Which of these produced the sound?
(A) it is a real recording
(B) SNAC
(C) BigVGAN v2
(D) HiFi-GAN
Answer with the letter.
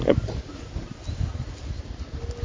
A